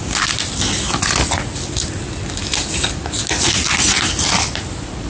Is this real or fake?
real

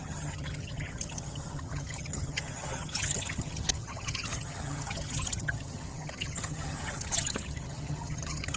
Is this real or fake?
fake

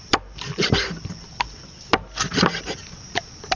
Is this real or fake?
real